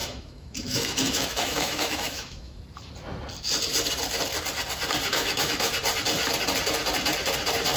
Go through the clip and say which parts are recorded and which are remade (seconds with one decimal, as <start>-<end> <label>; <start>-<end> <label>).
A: 0.0-2.6 remade; 2.6-5.1 recorded; 5.1-5.7 remade; 5.7-7.8 recorded